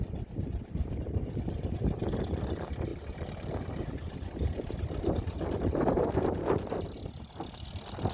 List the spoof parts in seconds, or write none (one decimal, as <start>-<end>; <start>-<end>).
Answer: none